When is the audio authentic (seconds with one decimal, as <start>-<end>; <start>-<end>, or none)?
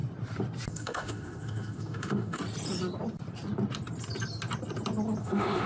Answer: 0.0-0.7; 2.4-5.2